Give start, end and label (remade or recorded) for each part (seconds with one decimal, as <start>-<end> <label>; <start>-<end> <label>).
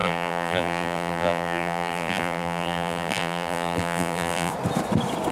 0.0-4.5 remade; 4.5-5.3 recorded